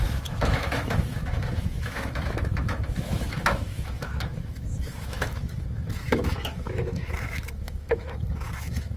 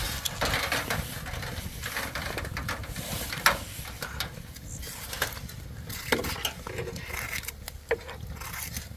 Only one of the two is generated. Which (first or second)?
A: first